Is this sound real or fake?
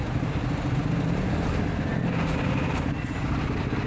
real